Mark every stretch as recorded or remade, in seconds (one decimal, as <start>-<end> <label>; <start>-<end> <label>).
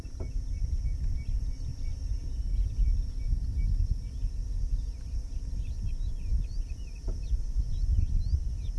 0.0-8.8 recorded